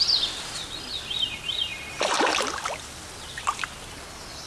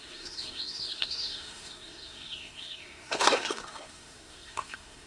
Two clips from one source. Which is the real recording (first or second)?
first